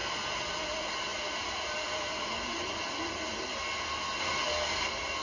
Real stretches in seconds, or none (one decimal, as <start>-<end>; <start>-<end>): 0.0-5.2